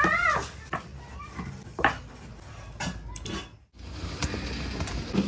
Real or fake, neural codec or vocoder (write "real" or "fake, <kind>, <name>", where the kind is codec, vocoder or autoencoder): real